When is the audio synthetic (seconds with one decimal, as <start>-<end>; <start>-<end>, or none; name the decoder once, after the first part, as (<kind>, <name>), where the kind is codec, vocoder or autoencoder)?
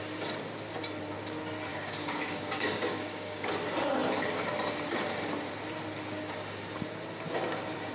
1.7-3.5 (codec, DAC)